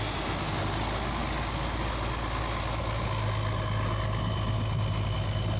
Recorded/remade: recorded